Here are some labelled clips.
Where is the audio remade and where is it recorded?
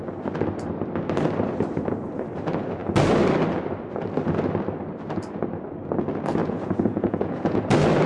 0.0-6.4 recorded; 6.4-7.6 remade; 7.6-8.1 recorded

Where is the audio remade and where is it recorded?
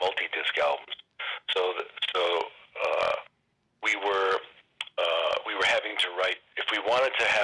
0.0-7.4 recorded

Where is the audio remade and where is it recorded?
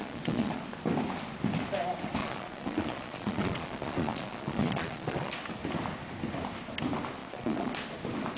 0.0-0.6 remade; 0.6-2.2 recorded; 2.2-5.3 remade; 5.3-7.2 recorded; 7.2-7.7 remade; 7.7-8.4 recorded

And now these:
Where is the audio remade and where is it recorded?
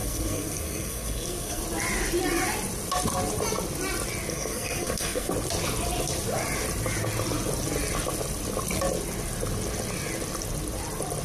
0.0-1.6 remade; 1.6-4.3 recorded; 4.3-5.3 remade; 5.3-11.2 recorded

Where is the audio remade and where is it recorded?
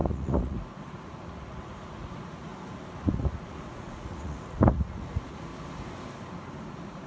0.0-2.5 remade; 2.5-3.0 recorded; 3.0-5.5 remade; 5.5-6.6 recorded; 6.6-7.1 remade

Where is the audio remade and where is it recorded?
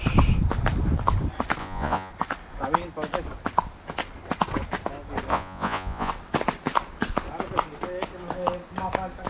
0.0-1.6 recorded; 1.6-2.1 remade; 2.1-5.3 recorded; 5.3-6.1 remade; 6.1-9.3 recorded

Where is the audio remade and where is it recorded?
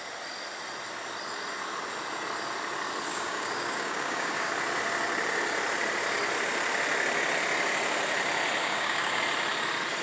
0.0-3.1 recorded; 3.1-4.5 remade; 4.5-8.6 recorded; 8.6-9.2 remade; 9.2-10.0 recorded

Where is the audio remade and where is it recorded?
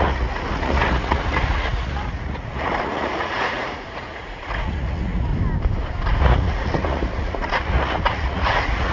0.0-5.3 remade; 5.3-6.2 recorded; 6.2-8.9 remade